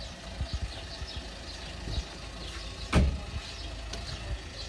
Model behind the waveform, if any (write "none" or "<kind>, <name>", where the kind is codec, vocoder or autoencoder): none